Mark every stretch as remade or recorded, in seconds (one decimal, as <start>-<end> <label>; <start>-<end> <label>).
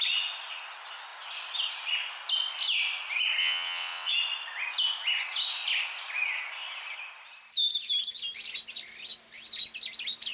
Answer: 0.0-3.4 recorded; 3.4-4.1 remade; 4.1-10.3 recorded